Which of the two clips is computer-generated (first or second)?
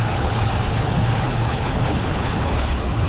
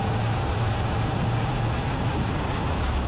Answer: first